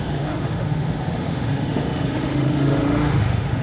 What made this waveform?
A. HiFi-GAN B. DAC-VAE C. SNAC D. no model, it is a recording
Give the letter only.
B